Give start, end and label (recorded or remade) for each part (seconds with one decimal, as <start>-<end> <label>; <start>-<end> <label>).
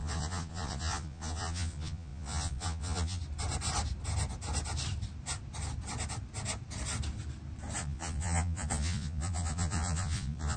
0.0-3.2 remade; 3.2-7.8 recorded; 7.8-10.6 remade